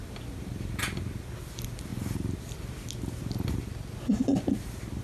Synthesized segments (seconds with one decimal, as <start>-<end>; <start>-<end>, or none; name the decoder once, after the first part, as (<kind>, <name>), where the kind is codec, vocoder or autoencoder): none